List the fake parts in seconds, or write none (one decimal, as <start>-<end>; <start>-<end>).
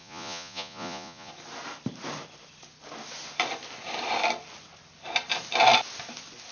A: 0.0-1.3